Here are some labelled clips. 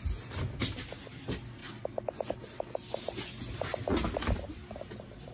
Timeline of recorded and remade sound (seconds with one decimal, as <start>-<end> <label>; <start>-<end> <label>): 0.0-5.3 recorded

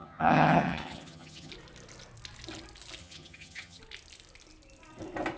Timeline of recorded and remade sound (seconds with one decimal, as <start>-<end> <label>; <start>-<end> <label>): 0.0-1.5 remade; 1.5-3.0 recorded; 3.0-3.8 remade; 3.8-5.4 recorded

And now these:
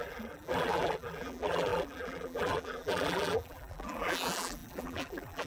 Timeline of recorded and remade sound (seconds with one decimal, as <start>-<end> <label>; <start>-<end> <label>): 0.0-5.5 remade

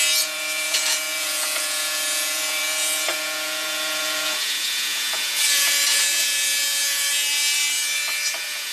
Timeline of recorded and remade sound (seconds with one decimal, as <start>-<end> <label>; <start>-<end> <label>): 0.0-8.7 remade

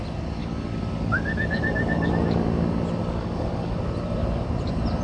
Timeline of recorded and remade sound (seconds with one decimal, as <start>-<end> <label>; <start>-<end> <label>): 0.0-0.4 recorded; 0.4-2.1 remade; 2.1-3.0 recorded; 3.0-3.8 remade; 3.8-5.0 recorded